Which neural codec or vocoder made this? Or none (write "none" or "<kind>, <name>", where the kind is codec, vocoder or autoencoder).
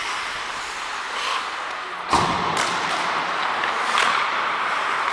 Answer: none